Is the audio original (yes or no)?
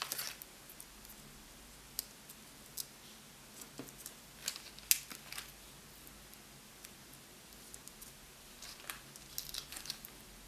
yes